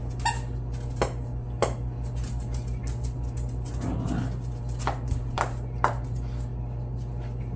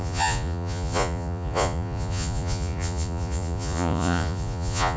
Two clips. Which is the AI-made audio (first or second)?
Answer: second